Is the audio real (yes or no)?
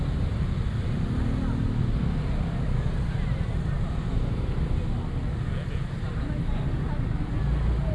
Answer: yes